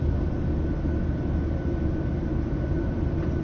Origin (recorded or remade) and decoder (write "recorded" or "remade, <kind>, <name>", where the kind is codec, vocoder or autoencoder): recorded